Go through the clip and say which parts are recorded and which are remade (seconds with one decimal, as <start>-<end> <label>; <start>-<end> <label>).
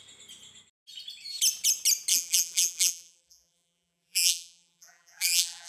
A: 0.0-2.1 recorded; 2.1-5.7 remade